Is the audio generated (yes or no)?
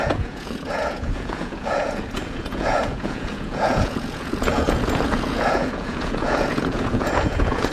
yes